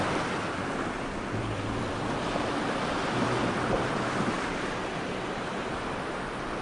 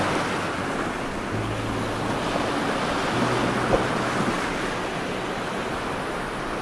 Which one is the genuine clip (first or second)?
second